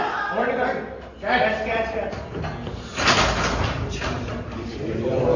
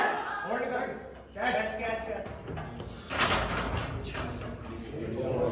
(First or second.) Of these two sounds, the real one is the second